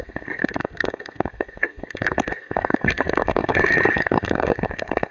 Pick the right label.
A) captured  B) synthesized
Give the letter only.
B